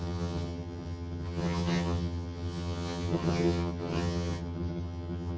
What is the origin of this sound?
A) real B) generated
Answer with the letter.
B